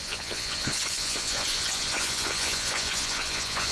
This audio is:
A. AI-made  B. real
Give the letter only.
A